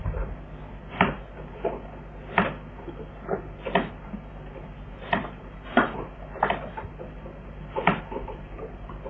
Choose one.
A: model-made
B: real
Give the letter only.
B